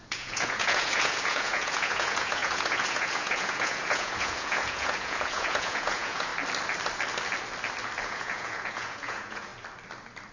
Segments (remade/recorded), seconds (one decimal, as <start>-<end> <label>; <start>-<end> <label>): 0.0-6.3 remade; 6.3-8.0 recorded; 8.0-9.5 remade; 9.5-10.3 recorded